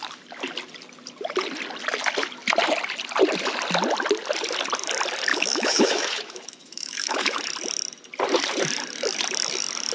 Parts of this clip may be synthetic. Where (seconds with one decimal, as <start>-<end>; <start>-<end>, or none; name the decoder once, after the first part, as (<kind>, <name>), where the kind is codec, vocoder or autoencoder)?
5.3-7.4 (autoencoder, DAC-VAE)